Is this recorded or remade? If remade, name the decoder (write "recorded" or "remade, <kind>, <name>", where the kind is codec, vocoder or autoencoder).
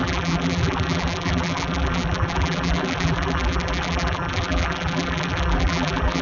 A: remade, vocoder, BigVGAN v2